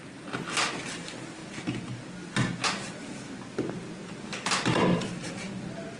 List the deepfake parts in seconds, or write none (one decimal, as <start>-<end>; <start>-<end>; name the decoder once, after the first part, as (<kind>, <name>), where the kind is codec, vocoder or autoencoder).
4.3-5.4 (vocoder, BigVGAN v2)